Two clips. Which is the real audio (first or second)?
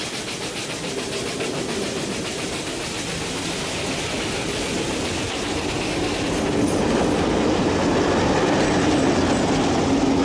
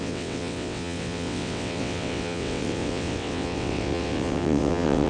first